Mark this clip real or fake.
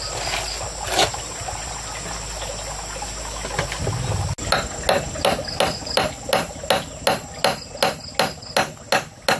real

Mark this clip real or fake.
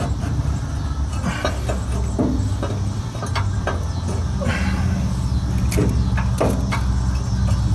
real